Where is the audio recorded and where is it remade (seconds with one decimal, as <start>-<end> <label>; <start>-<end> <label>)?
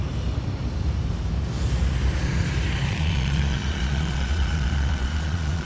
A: 0.0-2.9 recorded; 2.9-5.7 remade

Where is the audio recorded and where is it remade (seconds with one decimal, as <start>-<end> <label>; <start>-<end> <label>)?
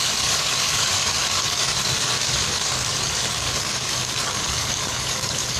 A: 0.0-5.6 remade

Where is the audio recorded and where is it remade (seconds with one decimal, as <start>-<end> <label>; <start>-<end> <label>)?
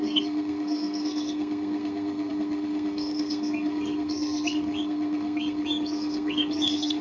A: 0.0-7.0 remade